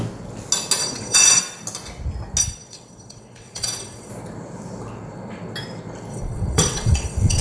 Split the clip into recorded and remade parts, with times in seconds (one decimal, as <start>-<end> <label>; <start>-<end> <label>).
0.0-0.8 recorded; 0.8-1.4 remade; 1.4-2.4 recorded; 2.4-4.1 remade; 4.1-6.1 recorded; 6.1-7.4 remade